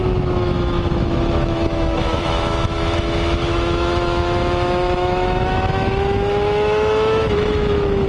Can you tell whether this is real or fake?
fake